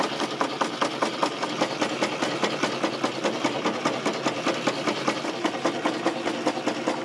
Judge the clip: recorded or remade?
recorded